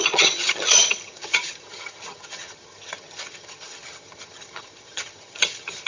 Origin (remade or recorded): remade